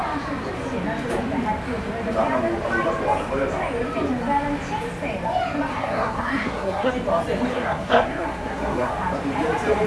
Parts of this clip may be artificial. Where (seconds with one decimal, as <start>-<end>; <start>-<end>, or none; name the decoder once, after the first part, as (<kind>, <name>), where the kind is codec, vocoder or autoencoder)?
5.7-6.9 (codec, SNAC); 7.5-8.9